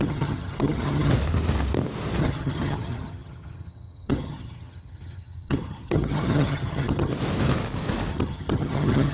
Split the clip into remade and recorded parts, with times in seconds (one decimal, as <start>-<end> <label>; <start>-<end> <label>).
0.0-1.1 remade; 1.1-2.2 recorded; 2.2-7.1 remade; 7.1-8.1 recorded; 8.1-9.1 remade